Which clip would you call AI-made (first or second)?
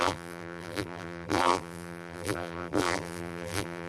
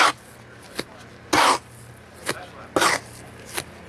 first